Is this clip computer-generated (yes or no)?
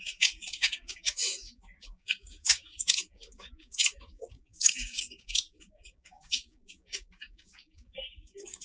yes